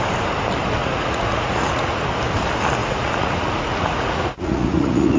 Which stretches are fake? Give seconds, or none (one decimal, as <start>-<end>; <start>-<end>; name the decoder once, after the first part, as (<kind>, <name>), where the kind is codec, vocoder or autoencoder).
0.8-2.0 (vocoder, Vocos); 2.8-5.2